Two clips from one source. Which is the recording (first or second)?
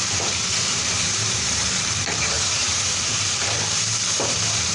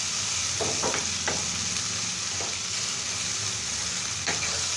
second